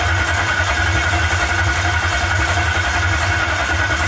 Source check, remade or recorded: recorded